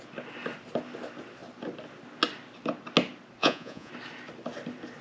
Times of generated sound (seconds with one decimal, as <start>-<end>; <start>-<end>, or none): 3.4-3.9